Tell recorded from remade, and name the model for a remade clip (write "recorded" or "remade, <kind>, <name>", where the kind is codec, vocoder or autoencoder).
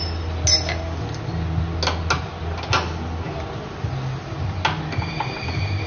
recorded